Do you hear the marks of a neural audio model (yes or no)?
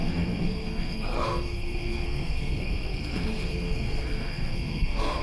yes